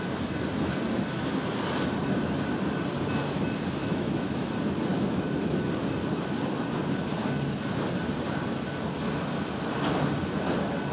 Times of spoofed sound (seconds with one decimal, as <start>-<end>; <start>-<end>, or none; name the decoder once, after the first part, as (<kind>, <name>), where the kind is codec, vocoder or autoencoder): 3.8-4.5 (autoencoder, DAC-VAE); 4.9-5.6